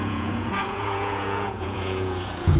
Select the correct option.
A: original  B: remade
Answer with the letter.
B